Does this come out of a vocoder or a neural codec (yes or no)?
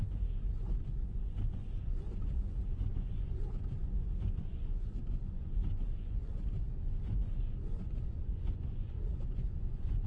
yes